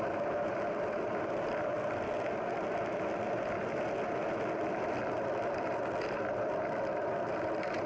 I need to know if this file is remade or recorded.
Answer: recorded